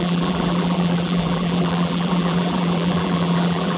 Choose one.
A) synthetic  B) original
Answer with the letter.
A